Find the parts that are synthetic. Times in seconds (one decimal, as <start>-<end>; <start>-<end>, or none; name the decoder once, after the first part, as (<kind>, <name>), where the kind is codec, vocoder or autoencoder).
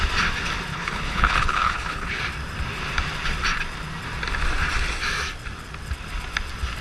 0.7-2.2 (codec, HILCodec)